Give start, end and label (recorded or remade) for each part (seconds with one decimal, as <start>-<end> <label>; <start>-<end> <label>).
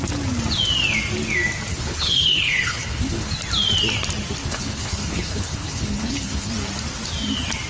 0.0-1.7 recorded; 1.7-3.3 remade; 3.3-4.4 recorded; 4.4-6.5 remade; 6.5-7.7 recorded